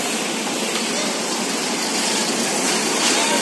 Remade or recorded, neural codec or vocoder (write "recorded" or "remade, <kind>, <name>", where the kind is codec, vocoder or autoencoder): recorded